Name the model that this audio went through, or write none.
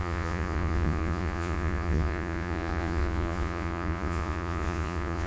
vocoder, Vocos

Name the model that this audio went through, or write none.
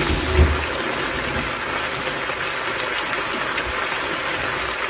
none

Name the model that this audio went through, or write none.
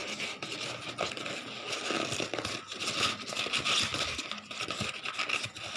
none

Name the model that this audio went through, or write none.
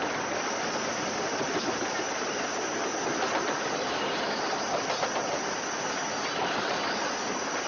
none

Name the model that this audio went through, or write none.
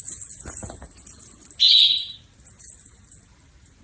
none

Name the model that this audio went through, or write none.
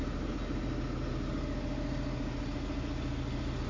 none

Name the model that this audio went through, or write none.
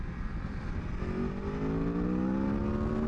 none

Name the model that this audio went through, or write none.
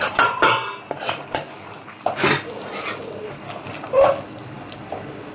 none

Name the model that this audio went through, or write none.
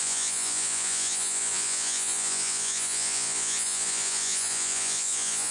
vocoder, Vocos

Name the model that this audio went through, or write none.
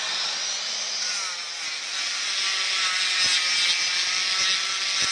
none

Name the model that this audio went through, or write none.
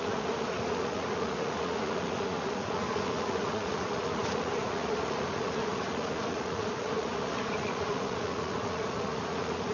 vocoder, Vocos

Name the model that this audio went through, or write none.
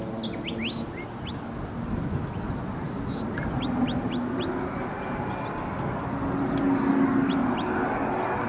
none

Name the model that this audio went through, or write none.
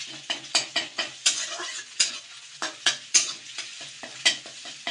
vocoder, Vocos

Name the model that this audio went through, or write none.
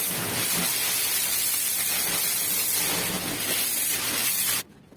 none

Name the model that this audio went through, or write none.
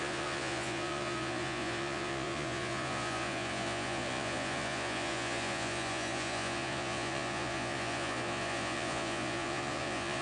vocoder, Vocos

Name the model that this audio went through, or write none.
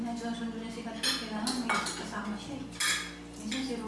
none